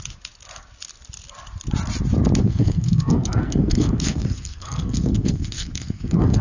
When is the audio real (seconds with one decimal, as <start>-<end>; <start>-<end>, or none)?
0.0-2.4